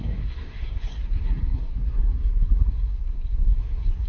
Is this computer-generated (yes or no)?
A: yes